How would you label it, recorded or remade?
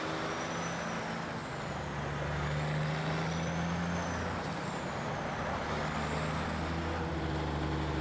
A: recorded